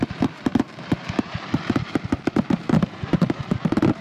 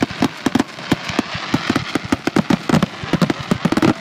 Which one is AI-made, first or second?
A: first